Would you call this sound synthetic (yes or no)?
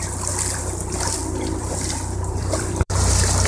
yes